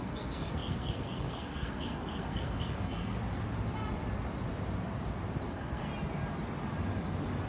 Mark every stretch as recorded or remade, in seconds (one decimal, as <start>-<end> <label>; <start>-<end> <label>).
0.0-3.1 remade; 3.1-5.5 recorded; 5.5-5.9 remade; 5.9-7.5 recorded